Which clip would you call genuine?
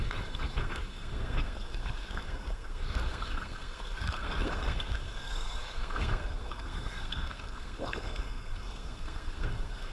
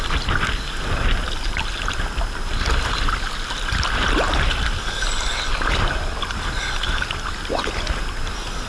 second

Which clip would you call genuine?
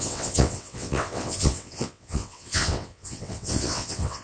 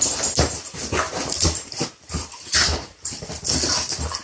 second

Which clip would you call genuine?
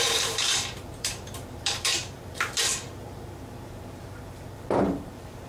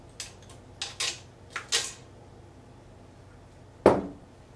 second